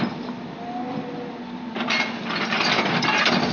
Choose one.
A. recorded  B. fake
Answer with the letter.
A